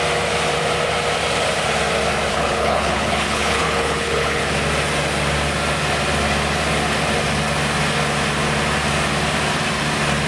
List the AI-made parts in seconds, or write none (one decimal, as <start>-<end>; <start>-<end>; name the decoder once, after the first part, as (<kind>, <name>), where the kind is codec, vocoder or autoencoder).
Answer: 2.3-4.4 (codec, HILCodec)